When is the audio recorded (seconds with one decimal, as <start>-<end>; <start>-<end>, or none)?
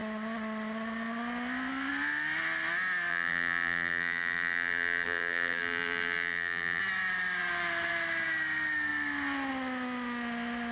0.0-3.1; 6.8-10.7